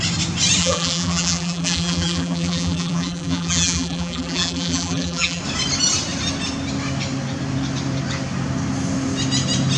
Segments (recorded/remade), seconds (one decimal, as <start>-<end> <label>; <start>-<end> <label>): 0.0-0.6 recorded; 0.6-5.4 remade; 5.4-9.8 recorded